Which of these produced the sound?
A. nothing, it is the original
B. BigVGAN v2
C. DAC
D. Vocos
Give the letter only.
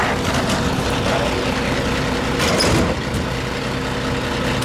A